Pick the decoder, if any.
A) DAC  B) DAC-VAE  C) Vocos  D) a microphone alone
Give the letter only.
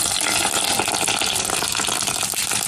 D